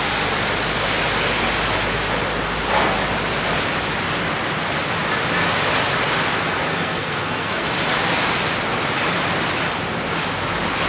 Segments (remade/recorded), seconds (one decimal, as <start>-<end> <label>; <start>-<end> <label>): 0.0-6.7 recorded; 6.7-7.7 remade; 7.7-10.9 recorded